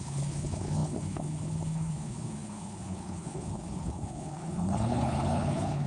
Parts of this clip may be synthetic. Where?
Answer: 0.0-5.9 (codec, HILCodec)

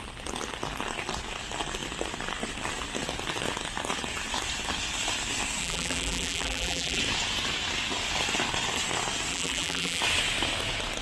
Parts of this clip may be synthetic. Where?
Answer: 5.6-7.0 (vocoder, BigVGAN v2); 9.3-10.0

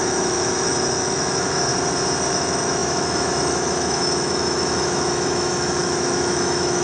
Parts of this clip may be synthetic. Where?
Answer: 0.0-1.7 (autoencoder, DAC-VAE); 2.3-6.8

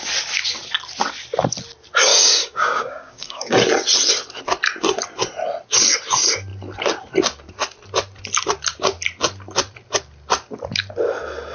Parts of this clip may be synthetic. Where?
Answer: 2.1-3.5 (codec, DAC)